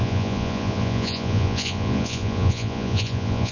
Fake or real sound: fake